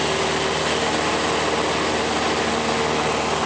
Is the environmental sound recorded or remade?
recorded